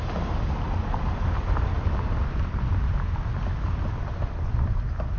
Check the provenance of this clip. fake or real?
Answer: real